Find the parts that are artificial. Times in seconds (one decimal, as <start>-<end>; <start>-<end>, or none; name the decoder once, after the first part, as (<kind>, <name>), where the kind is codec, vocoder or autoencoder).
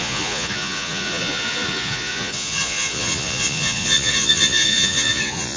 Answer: 0.0-5.6 (vocoder, Vocos)